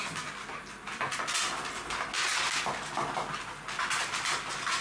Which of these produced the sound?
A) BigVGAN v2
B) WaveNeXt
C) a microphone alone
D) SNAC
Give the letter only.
C